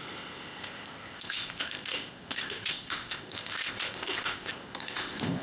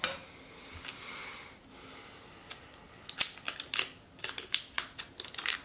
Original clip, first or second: second